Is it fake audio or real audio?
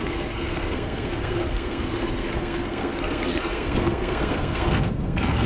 fake